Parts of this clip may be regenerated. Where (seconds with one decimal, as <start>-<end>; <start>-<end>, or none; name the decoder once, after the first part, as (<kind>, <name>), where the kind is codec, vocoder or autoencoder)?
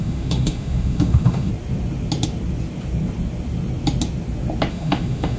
0.0-1.5 (autoencoder, DAC-VAE); 4.7-5.4